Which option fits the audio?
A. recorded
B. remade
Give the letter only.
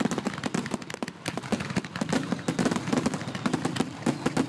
A